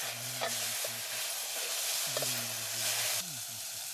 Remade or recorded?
recorded